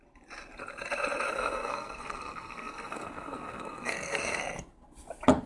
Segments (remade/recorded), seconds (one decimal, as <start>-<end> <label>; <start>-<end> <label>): 0.0-1.3 recorded; 1.3-4.4 remade; 4.4-5.5 recorded